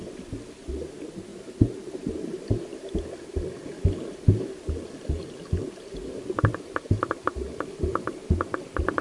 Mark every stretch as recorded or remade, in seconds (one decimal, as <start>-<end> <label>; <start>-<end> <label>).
0.0-1.3 recorded; 1.3-2.1 remade; 2.1-9.0 recorded